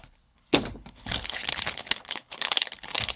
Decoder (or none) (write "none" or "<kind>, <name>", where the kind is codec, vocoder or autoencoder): codec, HILCodec